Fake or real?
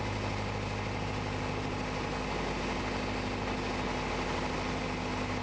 real